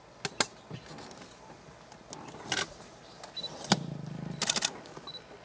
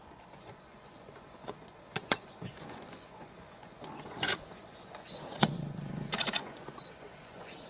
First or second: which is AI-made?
second